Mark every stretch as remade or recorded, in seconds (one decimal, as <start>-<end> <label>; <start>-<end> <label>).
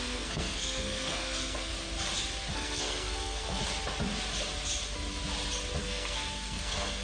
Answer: 0.0-1.7 remade; 1.7-2.5 recorded; 2.5-3.6 remade; 3.6-5.8 recorded; 5.8-7.0 remade